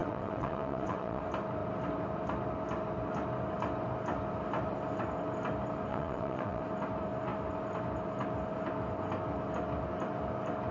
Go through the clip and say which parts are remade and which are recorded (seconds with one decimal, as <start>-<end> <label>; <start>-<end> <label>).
0.0-1.2 remade; 1.2-5.9 recorded; 5.9-6.6 remade; 6.6-10.7 recorded